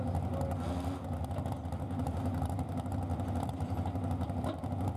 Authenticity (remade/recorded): recorded